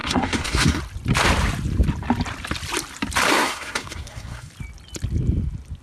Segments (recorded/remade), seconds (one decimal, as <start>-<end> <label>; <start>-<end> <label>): 0.0-0.8 remade; 0.8-3.3 recorded; 3.3-4.5 remade; 4.5-5.8 recorded